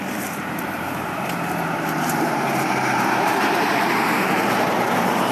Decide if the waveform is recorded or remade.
remade